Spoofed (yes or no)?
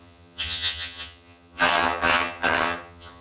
yes